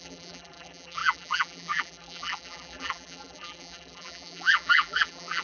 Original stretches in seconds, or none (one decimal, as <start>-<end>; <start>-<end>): none